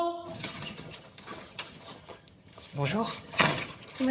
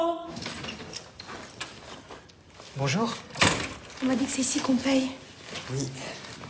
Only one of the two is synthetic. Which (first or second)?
first